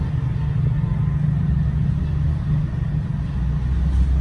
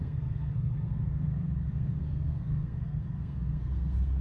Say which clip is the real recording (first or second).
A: first